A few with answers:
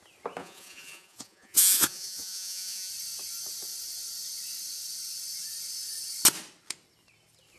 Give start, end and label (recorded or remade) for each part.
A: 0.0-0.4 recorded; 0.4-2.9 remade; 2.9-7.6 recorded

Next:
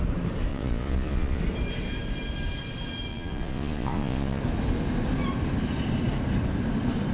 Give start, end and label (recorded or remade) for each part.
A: 0.0-0.5 recorded; 0.5-1.4 remade; 1.4-3.1 recorded; 3.1-4.4 remade; 4.4-7.1 recorded

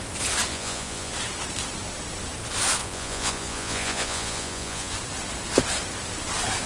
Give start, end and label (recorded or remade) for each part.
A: 0.0-0.5 recorded; 0.5-1.1 remade; 1.1-2.8 recorded; 2.8-4.9 remade; 4.9-6.7 recorded

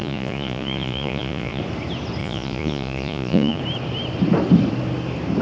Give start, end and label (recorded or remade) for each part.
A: 0.0-1.6 remade; 1.6-2.2 recorded; 2.2-3.6 remade; 3.6-5.4 recorded

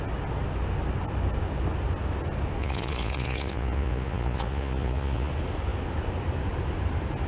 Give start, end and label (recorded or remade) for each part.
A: 0.0-2.6 recorded; 2.6-5.3 remade; 5.3-7.3 recorded

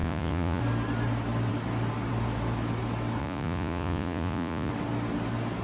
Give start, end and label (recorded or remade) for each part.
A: 0.0-0.6 remade; 0.6-3.2 recorded; 3.2-4.7 remade; 4.7-5.6 recorded